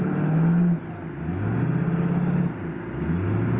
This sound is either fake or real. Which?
real